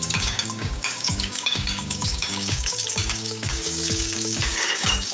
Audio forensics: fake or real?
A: fake